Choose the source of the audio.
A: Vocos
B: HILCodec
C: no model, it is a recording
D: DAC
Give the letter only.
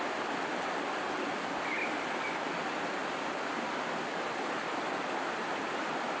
C